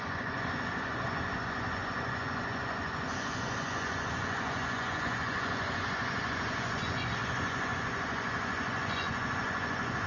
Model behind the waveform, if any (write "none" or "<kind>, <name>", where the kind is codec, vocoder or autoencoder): vocoder, Vocos